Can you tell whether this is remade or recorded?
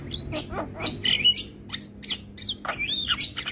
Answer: recorded